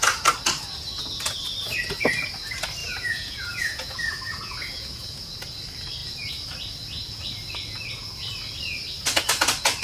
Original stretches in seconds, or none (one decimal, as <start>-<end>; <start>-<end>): 0.0-2.8; 5.3-9.8